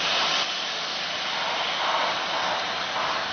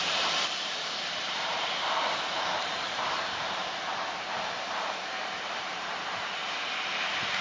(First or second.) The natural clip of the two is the first